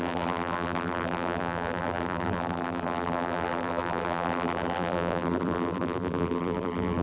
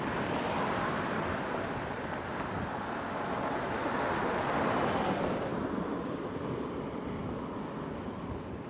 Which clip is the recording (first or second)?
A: second